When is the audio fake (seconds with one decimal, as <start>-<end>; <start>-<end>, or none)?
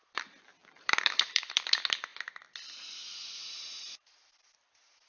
0.6-1.7